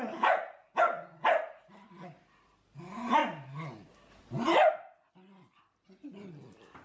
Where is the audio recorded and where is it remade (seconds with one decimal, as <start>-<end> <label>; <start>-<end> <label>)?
0.0-6.8 recorded